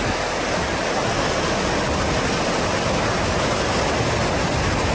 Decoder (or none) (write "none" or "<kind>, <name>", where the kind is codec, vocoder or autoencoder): none